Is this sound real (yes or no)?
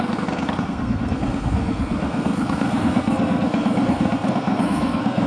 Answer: no